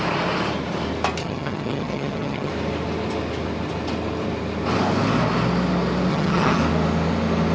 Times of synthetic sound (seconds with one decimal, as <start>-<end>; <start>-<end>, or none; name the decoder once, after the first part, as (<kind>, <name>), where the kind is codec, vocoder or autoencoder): 1.2-2.5 (vocoder, HiFi-GAN); 6.1-6.6